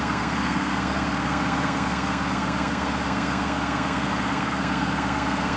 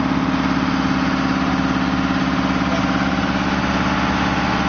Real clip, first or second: second